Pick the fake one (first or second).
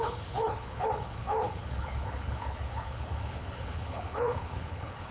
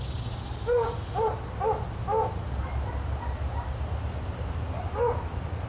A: first